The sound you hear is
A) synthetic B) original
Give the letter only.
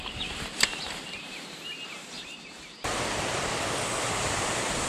A